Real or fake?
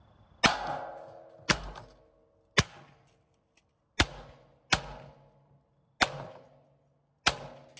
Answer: real